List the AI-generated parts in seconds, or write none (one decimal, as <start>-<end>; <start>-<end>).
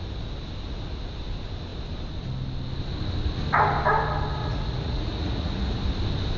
4.4-5.8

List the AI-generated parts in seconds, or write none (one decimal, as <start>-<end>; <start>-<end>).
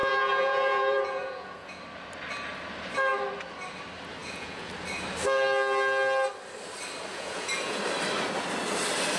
0.0-1.8; 4.2-4.7; 7.1-7.8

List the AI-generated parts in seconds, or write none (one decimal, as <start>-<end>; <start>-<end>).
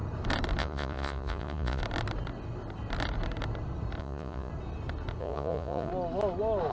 0.6-1.8; 4.0-4.5; 5.2-5.9